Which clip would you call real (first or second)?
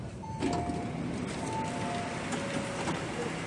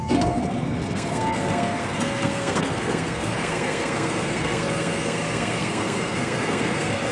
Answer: first